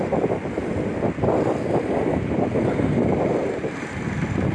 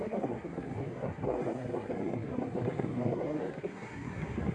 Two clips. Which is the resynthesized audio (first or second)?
second